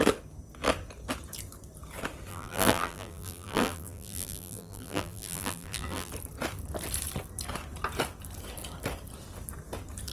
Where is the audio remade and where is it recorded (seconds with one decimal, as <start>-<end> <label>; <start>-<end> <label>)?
0.0-2.3 recorded; 2.3-6.1 remade; 6.1-10.1 recorded